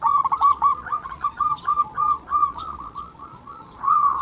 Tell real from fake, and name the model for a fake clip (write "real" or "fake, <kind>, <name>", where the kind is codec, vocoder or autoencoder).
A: fake, vocoder, Vocos